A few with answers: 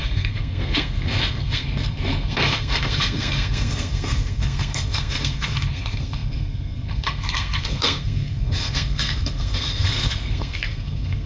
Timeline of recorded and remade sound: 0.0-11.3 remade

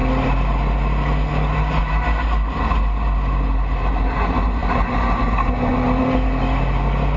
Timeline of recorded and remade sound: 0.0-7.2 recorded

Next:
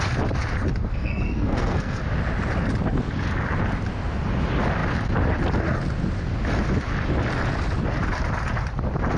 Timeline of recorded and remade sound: 0.0-0.9 recorded; 0.9-2.0 remade; 2.0-9.2 recorded